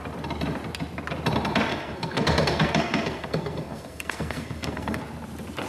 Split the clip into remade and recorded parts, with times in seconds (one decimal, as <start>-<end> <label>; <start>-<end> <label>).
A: 0.0-1.7 recorded; 1.7-5.0 remade; 5.0-5.7 recorded